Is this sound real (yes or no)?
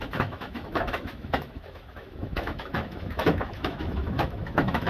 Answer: no